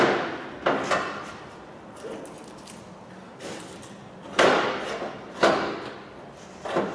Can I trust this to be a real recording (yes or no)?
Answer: yes